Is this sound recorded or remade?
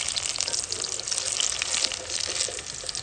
recorded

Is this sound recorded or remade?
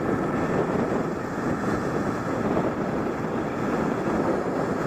recorded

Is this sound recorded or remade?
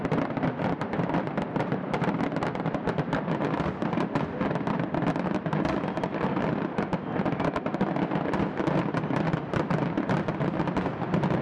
recorded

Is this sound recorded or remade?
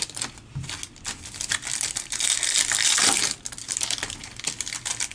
recorded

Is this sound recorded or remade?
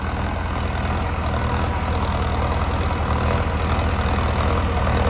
recorded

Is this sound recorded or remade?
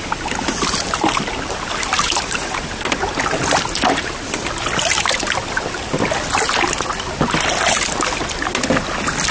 recorded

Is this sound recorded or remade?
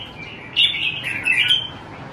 recorded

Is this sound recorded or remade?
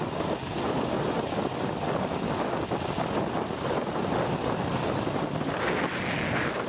recorded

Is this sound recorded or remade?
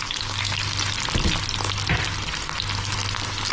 recorded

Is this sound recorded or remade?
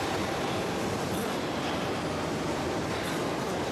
recorded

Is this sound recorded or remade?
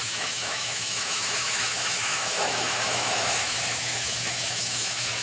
remade